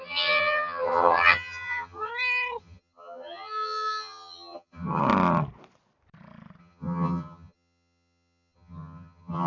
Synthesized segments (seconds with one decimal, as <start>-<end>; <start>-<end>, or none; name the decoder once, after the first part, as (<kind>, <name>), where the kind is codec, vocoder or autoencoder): 0.0-2.1 (vocoder, HiFi-GAN); 2.6-5.0; 6.6-9.5